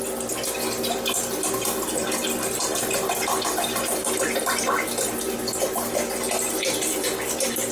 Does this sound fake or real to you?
real